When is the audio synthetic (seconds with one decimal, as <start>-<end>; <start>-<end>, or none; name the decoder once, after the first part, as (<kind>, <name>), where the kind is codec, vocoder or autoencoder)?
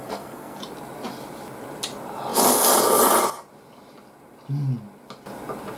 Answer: 0.0-0.6 (codec, SNAC)